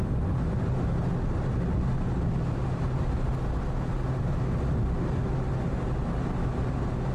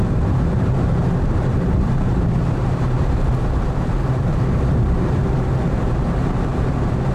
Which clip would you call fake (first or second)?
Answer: second